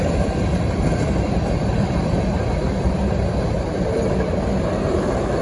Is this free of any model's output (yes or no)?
no